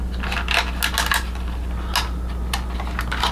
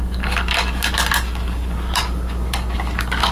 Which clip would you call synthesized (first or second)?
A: second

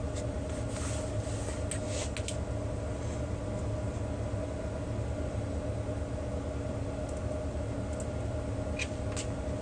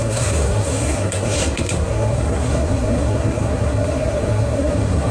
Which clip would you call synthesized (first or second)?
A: second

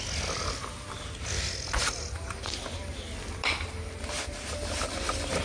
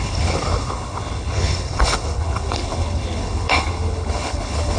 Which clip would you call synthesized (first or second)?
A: second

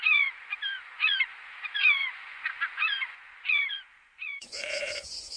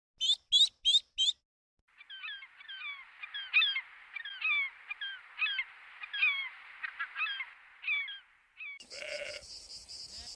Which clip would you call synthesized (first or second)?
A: first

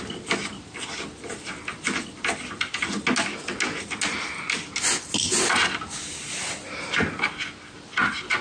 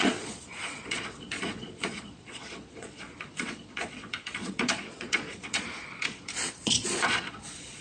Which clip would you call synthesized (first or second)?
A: second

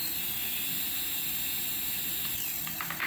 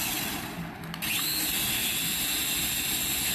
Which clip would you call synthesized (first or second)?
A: first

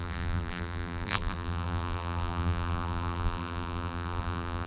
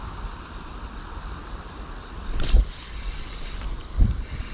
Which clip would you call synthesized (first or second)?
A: first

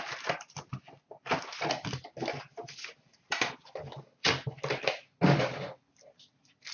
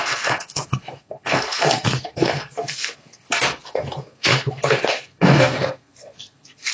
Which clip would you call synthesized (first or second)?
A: second